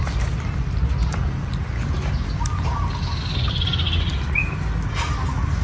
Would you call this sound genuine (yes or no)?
yes